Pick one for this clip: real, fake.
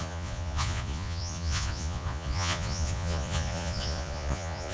fake